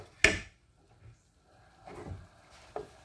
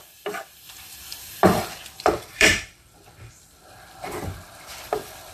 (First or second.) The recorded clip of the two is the first